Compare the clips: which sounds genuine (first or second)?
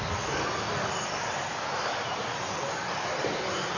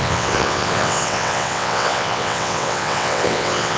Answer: first